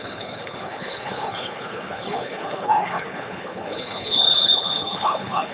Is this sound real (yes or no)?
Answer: no